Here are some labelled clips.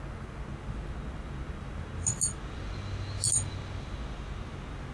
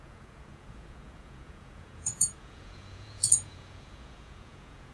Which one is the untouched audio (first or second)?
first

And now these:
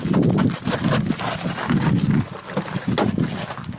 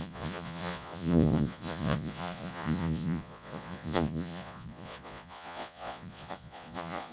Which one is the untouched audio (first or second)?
first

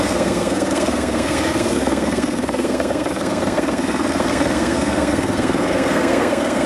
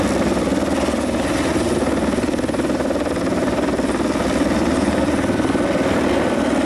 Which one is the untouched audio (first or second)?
second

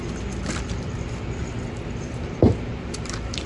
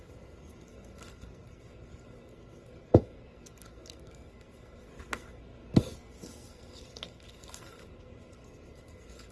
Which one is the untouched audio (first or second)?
first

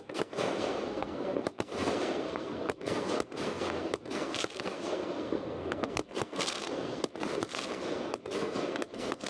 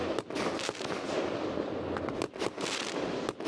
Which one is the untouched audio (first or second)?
second